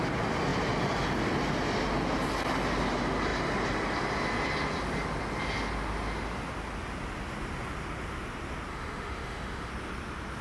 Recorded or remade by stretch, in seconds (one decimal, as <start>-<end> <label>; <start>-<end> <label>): 0.0-8.7 recorded; 8.7-9.7 remade; 9.7-10.4 recorded